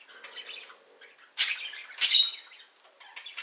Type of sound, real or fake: real